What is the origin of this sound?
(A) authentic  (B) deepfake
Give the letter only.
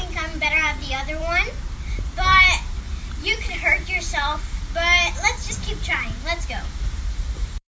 B